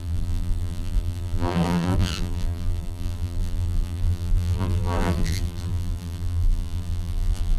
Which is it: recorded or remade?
remade